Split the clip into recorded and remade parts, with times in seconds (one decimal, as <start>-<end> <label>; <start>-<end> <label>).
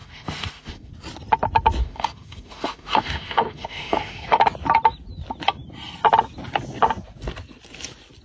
0.0-0.9 remade; 0.9-1.8 recorded; 1.8-4.4 remade; 4.4-8.2 recorded